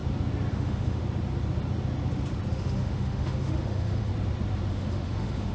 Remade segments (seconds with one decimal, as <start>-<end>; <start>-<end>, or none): 0.5-1.0; 2.5-4.1; 4.7-5.5